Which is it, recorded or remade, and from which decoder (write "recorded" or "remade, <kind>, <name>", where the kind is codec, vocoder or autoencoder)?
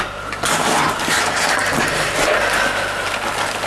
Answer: recorded